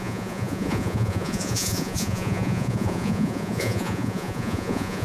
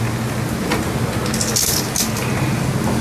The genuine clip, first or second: second